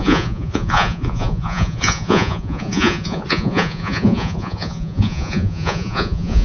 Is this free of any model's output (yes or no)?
no